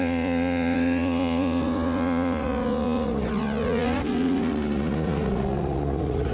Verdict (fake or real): fake